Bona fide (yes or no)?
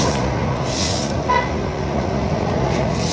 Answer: no